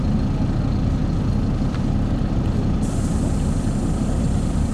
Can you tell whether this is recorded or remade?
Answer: remade